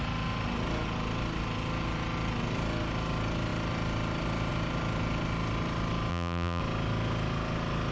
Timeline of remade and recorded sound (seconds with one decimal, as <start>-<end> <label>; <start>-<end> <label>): 0.0-6.1 recorded; 6.1-6.6 remade; 6.6-7.9 recorded